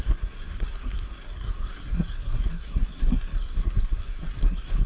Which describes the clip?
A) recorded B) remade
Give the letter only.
B